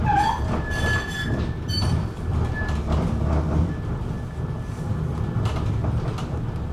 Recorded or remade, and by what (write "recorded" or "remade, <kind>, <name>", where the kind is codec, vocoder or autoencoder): recorded